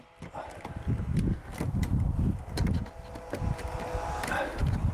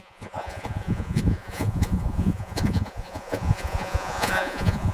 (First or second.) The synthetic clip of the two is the second